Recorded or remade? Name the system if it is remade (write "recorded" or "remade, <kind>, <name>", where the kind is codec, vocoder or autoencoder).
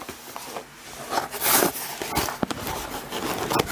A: recorded